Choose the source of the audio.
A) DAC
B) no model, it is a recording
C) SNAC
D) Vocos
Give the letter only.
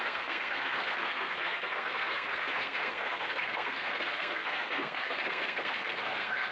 C